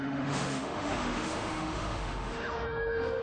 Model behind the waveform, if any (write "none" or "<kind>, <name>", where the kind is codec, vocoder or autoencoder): autoencoder, DAC-VAE